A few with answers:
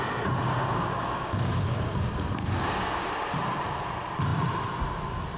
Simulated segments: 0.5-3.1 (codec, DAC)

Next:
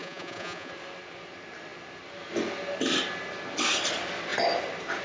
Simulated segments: 0.0-0.7 (vocoder, Vocos)

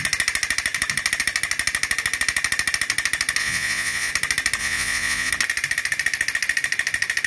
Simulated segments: 3.4-4.1 (vocoder, Vocos); 4.6-5.3

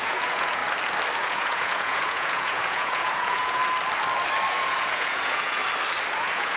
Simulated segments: 0.0-0.6 (vocoder, Vocos); 1.2-3.6; 4.5-5.6; 6.1-6.6

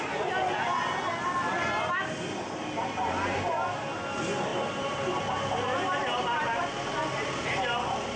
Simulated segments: none

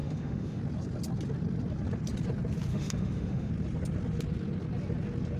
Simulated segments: 0.0-0.6 (autoencoder, DAC-VAE); 2.7-3.5

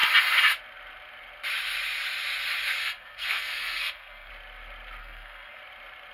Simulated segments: 2.8-4.3 (codec, SNAC); 5.0-5.6